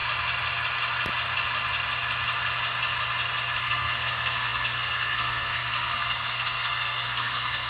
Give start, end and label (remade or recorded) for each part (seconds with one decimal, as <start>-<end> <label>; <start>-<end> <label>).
0.0-3.6 recorded; 3.6-7.7 remade